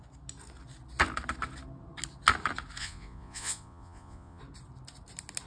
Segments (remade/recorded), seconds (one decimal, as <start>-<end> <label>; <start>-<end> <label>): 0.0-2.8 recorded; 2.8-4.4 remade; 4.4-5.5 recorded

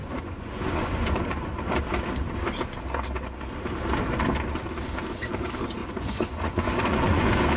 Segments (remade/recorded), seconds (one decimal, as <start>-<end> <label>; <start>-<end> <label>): 0.0-1.5 remade; 1.5-5.8 recorded; 5.8-7.6 remade

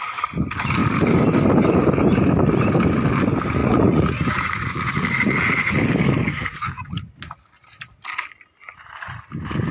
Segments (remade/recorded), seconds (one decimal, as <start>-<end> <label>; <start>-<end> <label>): 0.0-3.6 recorded; 3.6-5.8 remade; 5.8-6.3 recorded; 6.3-7.1 remade; 7.1-9.7 recorded